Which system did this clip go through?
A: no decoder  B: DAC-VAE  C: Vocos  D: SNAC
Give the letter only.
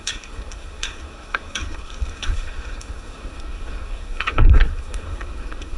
D